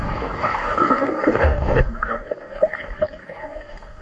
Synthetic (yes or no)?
yes